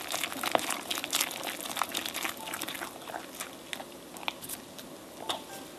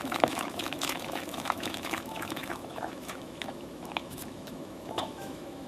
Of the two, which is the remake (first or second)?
second